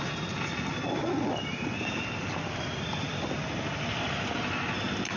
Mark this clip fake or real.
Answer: real